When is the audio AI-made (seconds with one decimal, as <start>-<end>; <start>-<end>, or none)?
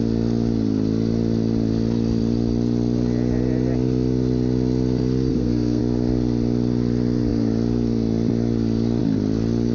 5.3-5.8